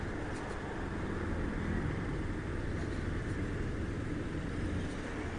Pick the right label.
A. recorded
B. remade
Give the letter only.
A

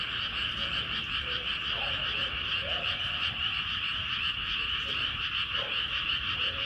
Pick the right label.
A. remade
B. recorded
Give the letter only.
A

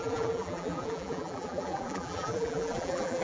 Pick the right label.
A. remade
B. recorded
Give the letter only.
A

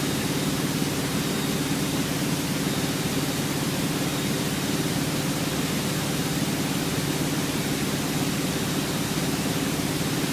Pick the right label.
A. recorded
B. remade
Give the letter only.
A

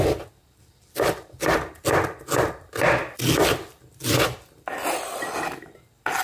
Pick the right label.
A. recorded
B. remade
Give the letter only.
A